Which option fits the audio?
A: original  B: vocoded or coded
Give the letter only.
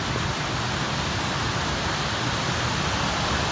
A